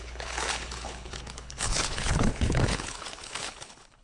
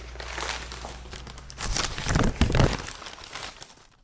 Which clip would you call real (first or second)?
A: second